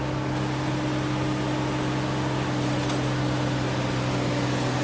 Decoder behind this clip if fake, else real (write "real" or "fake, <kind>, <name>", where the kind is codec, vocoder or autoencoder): real